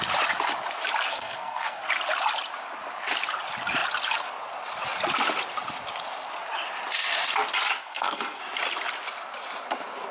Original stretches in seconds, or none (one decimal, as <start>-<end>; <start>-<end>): 0.0-1.1; 1.8-7.8; 8.4-10.1

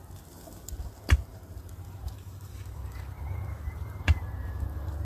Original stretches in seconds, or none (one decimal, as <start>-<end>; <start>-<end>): 0.0-1.3; 4.3-5.0

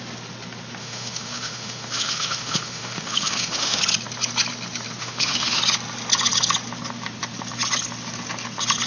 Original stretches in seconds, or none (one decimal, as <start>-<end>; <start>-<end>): 0.0-0.8; 3.8-5.0; 5.6-8.9